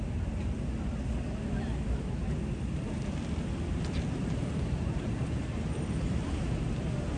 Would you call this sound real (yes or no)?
yes